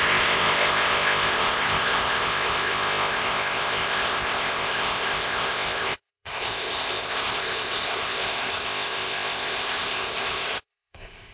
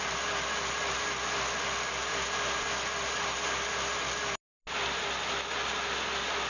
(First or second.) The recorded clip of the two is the second